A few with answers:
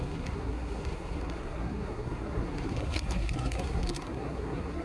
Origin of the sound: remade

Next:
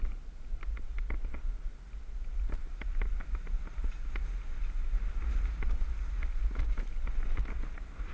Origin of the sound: recorded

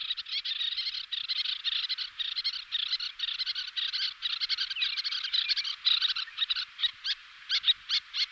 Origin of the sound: recorded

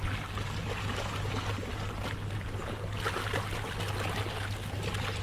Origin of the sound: recorded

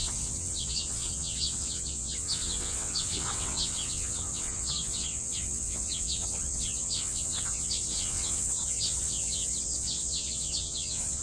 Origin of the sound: remade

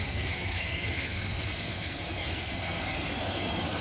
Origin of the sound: remade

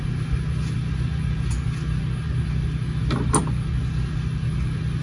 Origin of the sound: recorded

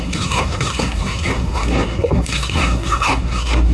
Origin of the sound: remade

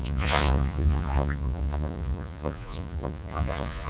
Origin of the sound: remade